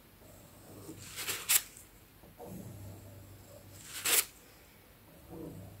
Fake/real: real